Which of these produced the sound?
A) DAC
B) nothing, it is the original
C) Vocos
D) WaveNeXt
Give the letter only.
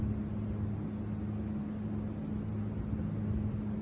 B